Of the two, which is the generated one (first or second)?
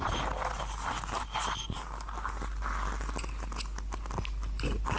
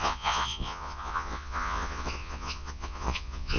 second